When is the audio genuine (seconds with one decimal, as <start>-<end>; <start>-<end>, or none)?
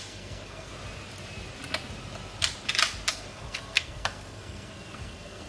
0.7-3.1